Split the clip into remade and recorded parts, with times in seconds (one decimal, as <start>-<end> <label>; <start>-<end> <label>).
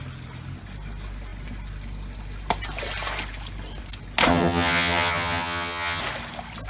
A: 0.0-4.3 recorded; 4.3-6.0 remade; 6.0-6.7 recorded